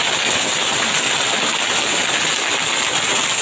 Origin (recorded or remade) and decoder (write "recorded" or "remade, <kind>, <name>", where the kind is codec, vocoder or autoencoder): recorded